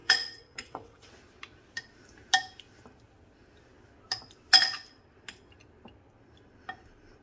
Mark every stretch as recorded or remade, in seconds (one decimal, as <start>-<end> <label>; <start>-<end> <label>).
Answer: 0.0-1.1 remade; 1.1-7.2 recorded